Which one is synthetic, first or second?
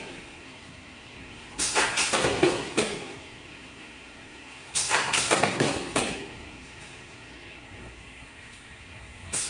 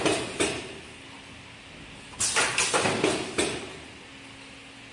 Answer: first